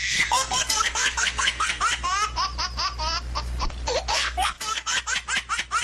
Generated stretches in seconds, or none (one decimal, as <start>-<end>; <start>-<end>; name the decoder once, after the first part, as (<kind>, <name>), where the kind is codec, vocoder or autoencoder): 0.0-1.8 (codec, SNAC); 4.1-5.0

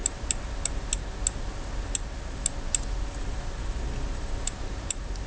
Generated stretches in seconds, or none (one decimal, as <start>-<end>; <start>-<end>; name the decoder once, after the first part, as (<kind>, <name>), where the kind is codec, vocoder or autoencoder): none

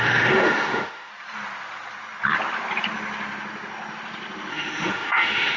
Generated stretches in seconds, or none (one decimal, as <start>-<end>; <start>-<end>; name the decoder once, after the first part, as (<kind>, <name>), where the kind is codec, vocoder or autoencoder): 0.0-1.1 (autoencoder, DAC-VAE); 4.5-5.6

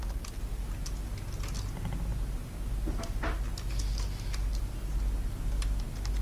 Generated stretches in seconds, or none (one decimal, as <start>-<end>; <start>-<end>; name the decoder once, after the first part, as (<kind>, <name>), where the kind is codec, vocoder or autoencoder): none

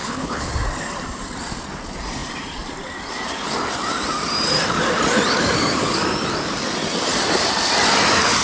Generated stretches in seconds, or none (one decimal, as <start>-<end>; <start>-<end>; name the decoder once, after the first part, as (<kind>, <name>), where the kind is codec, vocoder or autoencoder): 0.0-0.5 (codec, HILCodec)

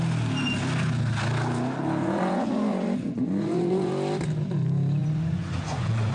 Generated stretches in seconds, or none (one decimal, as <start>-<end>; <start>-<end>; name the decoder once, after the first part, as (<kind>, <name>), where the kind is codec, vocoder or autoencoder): 2.0-3.9 (vocoder, Vocos); 5.0-6.1

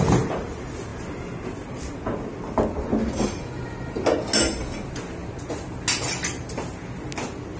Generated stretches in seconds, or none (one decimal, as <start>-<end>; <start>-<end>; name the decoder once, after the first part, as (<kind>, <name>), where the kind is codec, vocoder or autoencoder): none

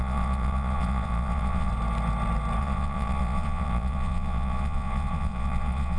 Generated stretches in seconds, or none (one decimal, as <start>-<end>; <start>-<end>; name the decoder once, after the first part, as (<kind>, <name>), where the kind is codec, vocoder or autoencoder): 0.0-1.7 (vocoder, Vocos); 2.6-6.0